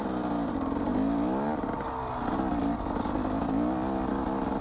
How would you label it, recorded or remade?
recorded